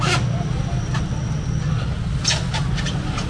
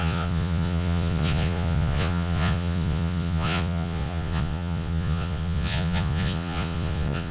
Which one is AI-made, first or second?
second